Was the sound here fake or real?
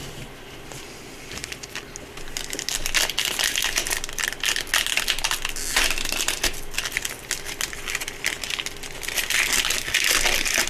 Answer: real